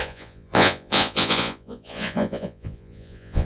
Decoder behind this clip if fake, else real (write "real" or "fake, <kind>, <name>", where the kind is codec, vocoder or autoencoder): fake, vocoder, Vocos